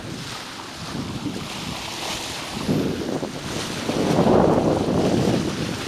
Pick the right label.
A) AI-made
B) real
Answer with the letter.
B